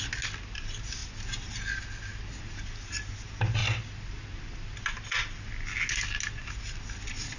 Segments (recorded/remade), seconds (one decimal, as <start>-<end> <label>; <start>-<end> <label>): 0.0-3.6 recorded; 3.6-4.9 remade; 4.9-7.4 recorded